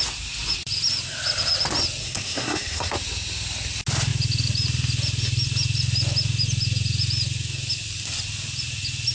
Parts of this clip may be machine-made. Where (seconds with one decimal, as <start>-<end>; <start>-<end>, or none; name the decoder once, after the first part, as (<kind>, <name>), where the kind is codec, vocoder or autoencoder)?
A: 2.0-2.9 (codec, SNAC)